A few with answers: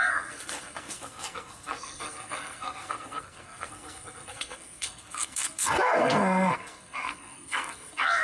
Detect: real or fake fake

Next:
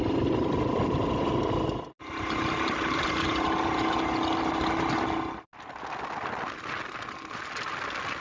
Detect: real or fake real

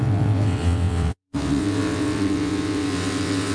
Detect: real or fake fake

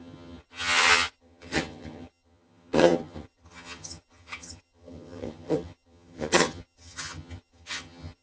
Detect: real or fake fake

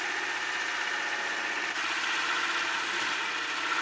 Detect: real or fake real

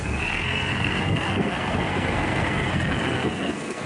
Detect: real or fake fake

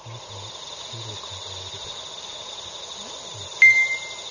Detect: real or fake real